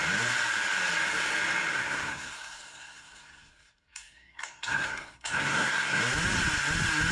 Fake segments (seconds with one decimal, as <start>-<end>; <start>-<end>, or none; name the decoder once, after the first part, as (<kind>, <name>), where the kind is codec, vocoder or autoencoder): 1.7-6.0 (codec, SNAC)